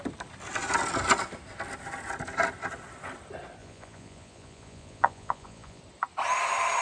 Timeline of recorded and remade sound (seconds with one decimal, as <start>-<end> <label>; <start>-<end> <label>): 0.0-3.6 recorded; 3.6-5.8 remade; 5.8-6.8 recorded